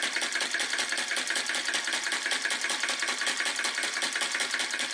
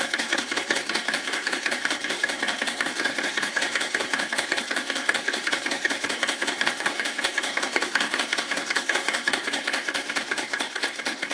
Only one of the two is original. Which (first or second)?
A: first